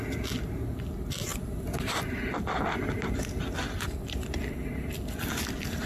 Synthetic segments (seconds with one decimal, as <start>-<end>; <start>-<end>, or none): none